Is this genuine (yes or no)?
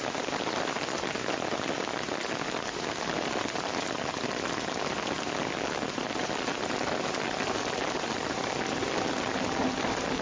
yes